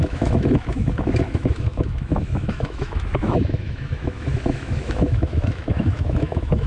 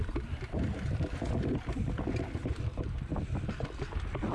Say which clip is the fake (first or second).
first